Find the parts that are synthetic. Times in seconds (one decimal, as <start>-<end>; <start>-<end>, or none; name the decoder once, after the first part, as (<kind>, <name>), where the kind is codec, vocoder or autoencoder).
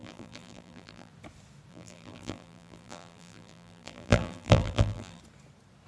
0.0-1.1 (vocoder, BigVGAN v2); 1.7-5.2